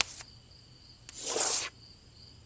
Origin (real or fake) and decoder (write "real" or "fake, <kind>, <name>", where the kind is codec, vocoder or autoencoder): real